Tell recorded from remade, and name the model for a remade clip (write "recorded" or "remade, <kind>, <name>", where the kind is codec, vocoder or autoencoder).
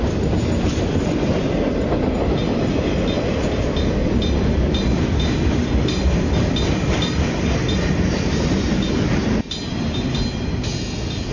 recorded